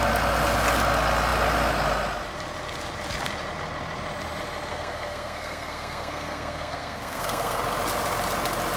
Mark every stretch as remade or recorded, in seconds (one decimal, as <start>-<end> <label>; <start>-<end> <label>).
0.0-4.7 recorded; 4.7-7.6 remade; 7.6-8.8 recorded